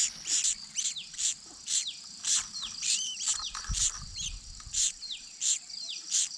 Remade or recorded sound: recorded